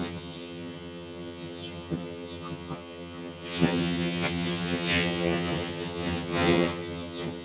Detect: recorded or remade remade